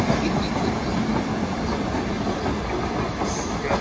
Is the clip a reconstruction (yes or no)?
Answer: no